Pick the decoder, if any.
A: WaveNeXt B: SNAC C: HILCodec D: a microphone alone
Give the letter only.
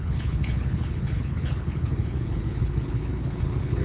C